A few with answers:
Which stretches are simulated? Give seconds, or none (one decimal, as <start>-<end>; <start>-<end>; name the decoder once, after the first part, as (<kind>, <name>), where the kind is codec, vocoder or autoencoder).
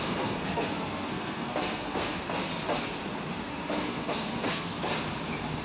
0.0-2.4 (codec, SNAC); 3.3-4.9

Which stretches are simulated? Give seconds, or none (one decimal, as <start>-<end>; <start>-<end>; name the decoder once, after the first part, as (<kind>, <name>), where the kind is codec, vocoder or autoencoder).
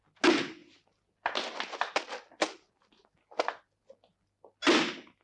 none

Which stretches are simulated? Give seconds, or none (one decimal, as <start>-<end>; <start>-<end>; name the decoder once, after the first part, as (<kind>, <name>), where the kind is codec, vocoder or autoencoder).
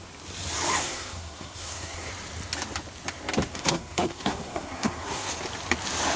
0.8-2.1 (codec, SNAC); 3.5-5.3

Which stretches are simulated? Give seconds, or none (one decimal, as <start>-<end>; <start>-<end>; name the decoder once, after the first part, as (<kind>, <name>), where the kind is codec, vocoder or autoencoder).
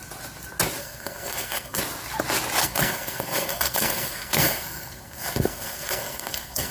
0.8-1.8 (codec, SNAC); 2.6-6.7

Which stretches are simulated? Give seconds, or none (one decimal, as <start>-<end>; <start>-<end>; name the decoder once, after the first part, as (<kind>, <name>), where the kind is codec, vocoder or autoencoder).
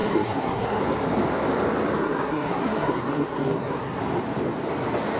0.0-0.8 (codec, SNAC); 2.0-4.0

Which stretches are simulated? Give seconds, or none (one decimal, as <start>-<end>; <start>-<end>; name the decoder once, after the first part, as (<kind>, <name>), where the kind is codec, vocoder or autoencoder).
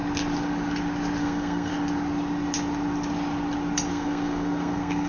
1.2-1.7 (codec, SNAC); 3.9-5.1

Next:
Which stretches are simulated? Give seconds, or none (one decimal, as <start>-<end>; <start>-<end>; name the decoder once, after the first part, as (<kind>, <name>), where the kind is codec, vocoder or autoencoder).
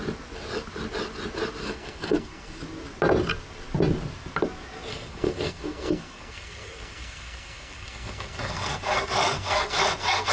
1.6-2.6 (codec, SNAC); 4.9-10.3